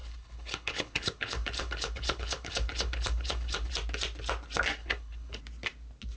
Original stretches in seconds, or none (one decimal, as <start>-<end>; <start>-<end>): 3.7-4.8; 5.4-6.2